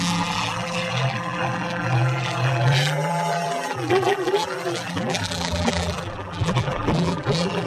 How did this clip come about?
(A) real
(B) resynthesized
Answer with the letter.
B